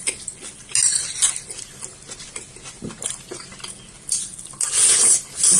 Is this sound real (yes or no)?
yes